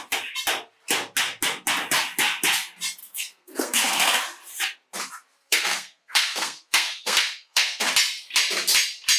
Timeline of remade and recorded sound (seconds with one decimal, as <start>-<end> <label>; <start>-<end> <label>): 0.0-3.0 recorded; 3.0-4.2 remade; 4.2-5.4 recorded; 5.4-7.9 remade; 7.9-9.2 recorded

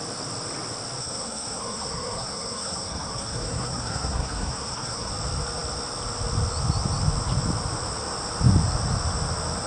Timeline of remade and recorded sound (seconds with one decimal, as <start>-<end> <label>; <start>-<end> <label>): 0.0-1.0 recorded; 1.0-5.1 remade; 5.1-9.7 recorded

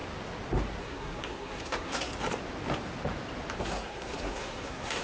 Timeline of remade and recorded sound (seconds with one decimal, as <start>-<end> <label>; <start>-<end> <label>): 0.0-0.8 recorded; 0.8-2.1 remade; 2.1-3.6 recorded; 3.6-5.0 remade